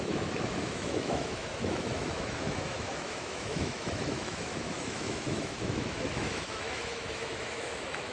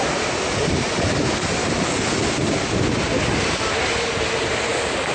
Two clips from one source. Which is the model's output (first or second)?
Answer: first